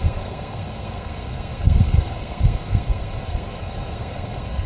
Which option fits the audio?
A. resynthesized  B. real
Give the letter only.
A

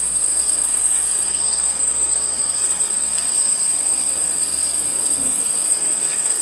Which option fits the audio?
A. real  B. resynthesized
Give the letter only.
B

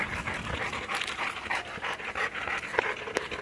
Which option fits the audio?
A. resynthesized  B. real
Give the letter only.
B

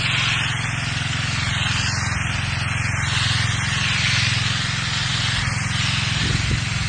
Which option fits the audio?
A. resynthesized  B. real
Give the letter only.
B